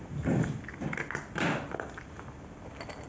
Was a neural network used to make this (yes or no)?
no